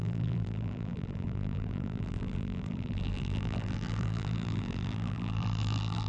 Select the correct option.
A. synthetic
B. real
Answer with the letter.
A